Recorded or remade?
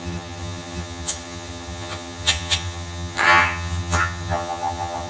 remade